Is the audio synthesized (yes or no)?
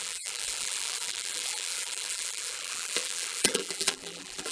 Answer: yes